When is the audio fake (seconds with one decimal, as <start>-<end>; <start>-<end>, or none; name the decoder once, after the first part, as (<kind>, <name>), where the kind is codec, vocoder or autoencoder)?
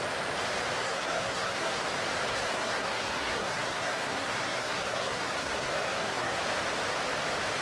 0.8-1.8 (codec, SNAC); 2.3-6.4